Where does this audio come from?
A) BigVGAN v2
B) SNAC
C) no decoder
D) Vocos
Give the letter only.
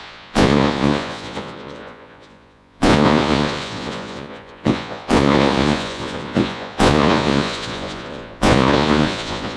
D